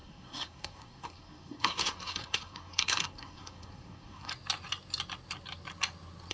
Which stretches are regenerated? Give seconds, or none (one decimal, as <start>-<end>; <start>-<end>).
0.0-4.3